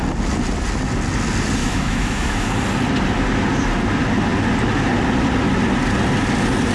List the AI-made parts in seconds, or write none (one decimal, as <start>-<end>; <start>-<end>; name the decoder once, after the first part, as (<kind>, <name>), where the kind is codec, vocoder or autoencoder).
1.6-2.5 (autoencoder, DAC-VAE)